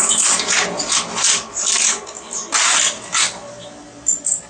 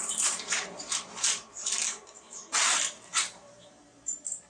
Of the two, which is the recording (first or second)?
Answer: first